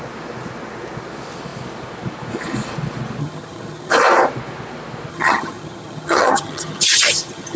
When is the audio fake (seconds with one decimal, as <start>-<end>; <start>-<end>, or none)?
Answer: 3.2-3.9; 5.1-7.6